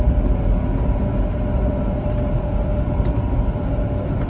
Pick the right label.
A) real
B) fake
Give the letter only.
A